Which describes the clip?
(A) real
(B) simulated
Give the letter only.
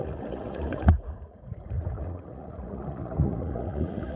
B